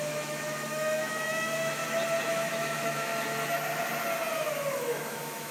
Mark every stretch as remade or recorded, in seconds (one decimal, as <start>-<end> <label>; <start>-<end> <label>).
0.0-1.8 remade; 1.8-2.3 recorded; 2.3-3.1 remade; 3.1-4.7 recorded; 4.7-5.5 remade